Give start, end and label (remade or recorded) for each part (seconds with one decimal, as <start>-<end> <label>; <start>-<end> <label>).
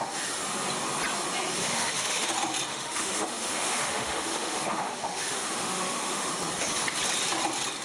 0.0-1.6 recorded; 1.6-2.3 remade; 2.3-2.7 recorded; 2.7-6.3 remade; 6.3-7.8 recorded